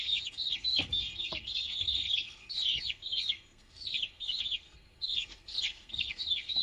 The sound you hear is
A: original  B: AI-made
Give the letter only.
B